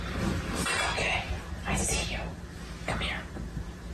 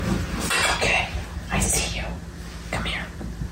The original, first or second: second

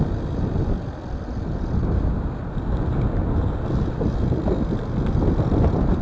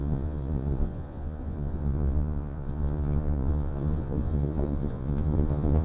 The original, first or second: first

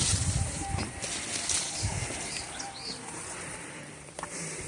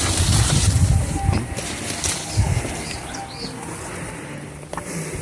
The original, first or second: second